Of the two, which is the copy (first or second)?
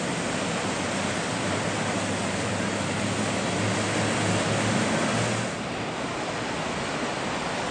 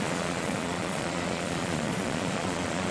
second